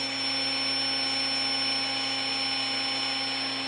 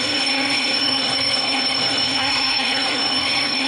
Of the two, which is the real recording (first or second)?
first